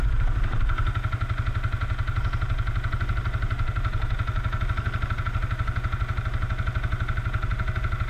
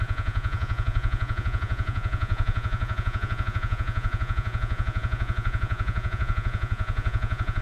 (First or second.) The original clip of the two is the first